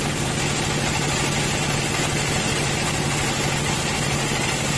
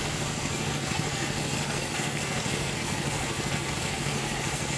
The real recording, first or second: first